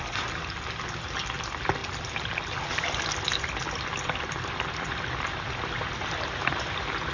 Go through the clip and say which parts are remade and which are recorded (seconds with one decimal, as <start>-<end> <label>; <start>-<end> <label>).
0.0-7.1 recorded